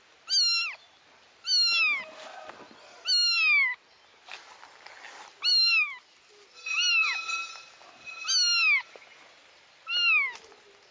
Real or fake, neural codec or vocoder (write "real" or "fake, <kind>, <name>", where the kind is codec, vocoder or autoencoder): real